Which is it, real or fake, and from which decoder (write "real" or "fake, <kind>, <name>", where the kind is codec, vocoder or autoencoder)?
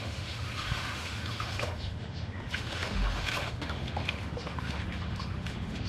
fake, autoencoder, DAC-VAE